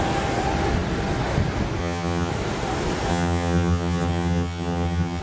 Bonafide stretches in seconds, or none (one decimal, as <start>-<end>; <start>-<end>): 0.0-1.8; 2.3-3.1